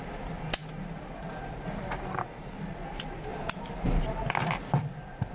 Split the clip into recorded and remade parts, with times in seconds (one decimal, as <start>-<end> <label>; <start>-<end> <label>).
0.0-5.3 recorded

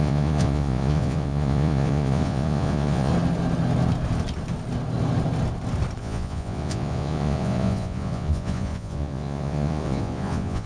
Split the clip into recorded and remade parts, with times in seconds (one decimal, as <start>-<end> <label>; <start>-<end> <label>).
0.0-3.1 remade; 3.1-6.0 recorded; 6.0-10.7 remade

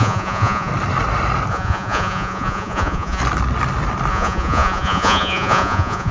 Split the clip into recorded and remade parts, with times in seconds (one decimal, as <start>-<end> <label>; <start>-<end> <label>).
0.0-0.7 remade; 0.7-1.5 recorded; 1.5-3.2 remade; 3.2-4.1 recorded; 4.1-6.1 remade

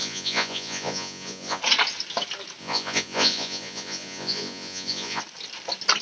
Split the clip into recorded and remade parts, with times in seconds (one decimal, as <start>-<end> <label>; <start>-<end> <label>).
0.0-1.6 remade; 1.6-2.6 recorded; 2.6-5.2 remade; 5.2-6.0 recorded

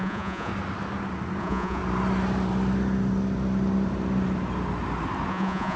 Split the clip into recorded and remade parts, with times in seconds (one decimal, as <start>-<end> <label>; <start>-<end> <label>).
0.0-0.5 remade; 0.5-1.4 recorded; 1.4-1.8 remade; 1.8-5.3 recorded; 5.3-5.8 remade

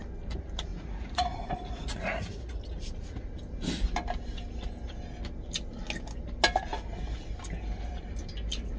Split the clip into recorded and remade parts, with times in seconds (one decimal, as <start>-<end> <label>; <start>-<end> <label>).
0.0-0.7 recorded; 0.7-2.6 remade; 2.6-8.8 recorded